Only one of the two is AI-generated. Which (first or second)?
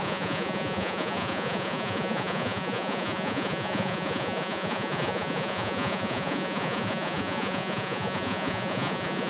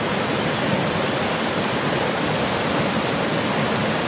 first